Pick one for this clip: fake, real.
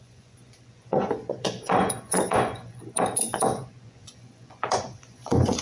fake